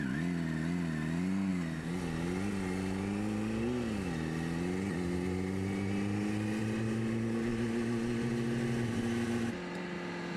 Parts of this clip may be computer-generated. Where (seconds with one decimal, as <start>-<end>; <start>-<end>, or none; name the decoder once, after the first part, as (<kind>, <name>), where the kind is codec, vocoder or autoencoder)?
none

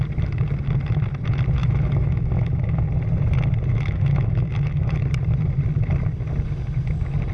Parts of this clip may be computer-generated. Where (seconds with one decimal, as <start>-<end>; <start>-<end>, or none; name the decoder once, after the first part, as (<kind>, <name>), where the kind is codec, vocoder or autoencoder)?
1.6-2.8 (autoencoder, DAC-VAE); 3.7-5.0

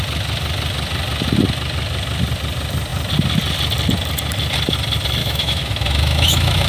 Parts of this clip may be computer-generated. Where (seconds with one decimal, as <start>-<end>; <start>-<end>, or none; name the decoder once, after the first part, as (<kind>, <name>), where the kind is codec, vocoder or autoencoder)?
5.2-6.7 (autoencoder, DAC-VAE)

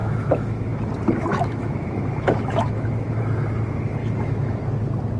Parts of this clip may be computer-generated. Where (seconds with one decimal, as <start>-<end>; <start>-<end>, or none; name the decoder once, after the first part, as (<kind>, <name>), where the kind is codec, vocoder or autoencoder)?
0.0-0.9 (autoencoder, DAC-VAE); 1.3-3.2; 4.0-4.6